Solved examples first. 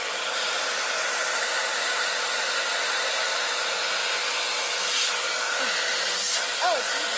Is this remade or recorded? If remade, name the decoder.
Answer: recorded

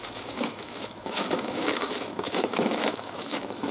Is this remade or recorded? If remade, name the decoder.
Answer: remade, autoencoder, DAC-VAE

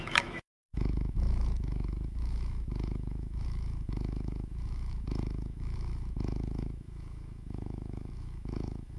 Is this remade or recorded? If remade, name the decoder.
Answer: remade, autoencoder, DAC-VAE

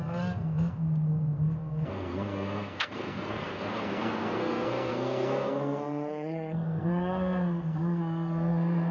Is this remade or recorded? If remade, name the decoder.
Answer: remade, codec, SNAC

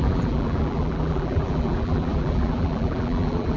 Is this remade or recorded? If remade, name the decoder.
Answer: remade, vocoder, BigVGAN v2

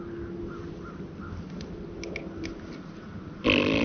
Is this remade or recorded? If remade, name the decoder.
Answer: recorded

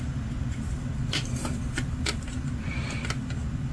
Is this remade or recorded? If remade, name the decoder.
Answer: recorded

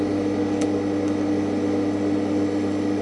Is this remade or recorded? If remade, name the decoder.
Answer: recorded